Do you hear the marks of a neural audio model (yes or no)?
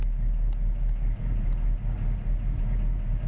no